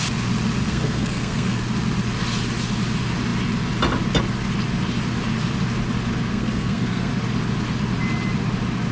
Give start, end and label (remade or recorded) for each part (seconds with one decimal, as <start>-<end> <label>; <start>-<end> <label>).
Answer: 0.0-0.6 recorded; 0.6-1.6 remade; 1.6-6.3 recorded; 6.3-7.1 remade; 7.1-8.9 recorded